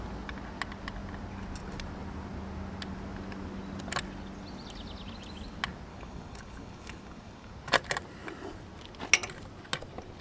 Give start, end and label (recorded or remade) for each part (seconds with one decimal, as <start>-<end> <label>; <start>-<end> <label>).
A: 0.0-5.9 recorded; 5.9-7.5 remade; 7.5-10.2 recorded